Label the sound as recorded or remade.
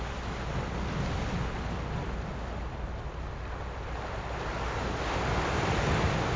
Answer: recorded